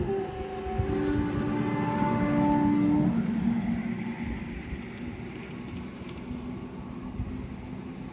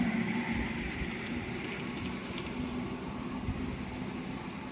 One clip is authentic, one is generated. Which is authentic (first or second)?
first